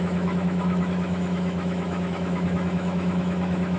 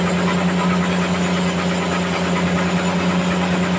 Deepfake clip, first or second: first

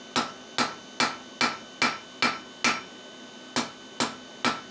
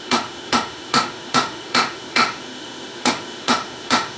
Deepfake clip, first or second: second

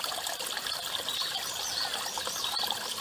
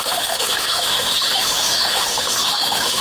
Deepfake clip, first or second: second